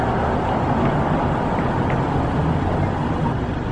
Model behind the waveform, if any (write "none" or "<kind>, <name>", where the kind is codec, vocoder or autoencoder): none